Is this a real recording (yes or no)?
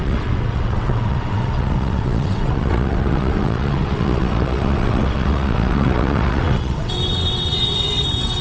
no